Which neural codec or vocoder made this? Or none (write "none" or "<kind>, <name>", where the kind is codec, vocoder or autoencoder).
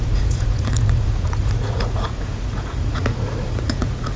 vocoder, Vocos